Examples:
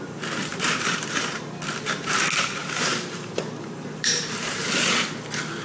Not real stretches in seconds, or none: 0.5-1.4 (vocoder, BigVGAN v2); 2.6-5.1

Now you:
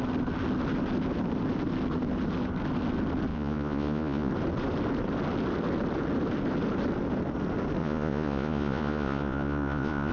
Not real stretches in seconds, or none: 3.3-4.3 (vocoder, Vocos); 7.8-10.1

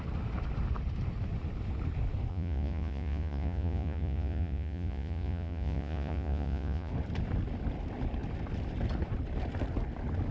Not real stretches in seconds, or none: 2.3-6.9 (vocoder, Vocos)

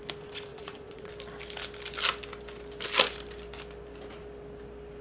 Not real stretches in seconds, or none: 0.5-1.1 (vocoder, Vocos)